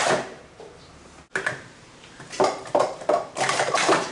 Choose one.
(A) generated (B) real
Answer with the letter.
A